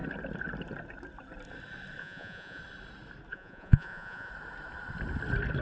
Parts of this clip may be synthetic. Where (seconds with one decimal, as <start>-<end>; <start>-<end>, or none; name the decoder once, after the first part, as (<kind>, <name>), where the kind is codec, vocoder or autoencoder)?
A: 2.0-2.6 (vocoder, Vocos); 3.3-4.3